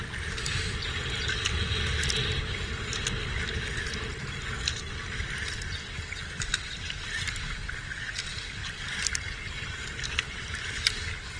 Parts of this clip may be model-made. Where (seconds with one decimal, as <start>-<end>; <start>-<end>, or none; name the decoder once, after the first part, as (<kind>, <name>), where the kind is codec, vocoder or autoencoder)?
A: none